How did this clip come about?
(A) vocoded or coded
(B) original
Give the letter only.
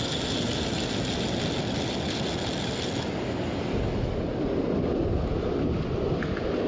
B